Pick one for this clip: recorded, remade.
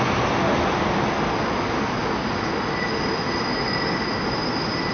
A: recorded